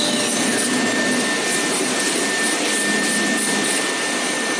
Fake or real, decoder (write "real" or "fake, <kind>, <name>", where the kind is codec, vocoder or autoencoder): real